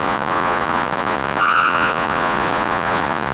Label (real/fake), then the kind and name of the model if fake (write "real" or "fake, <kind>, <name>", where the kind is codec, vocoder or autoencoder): fake, vocoder, Vocos